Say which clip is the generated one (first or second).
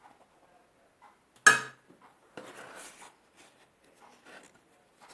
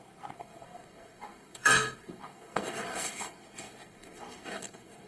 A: second